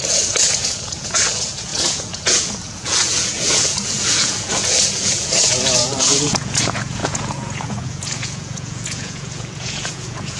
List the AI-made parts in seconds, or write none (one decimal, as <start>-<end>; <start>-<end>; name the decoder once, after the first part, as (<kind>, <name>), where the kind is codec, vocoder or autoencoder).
0.0-10.4 (vocoder, Vocos)